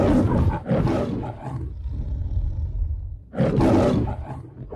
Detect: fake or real real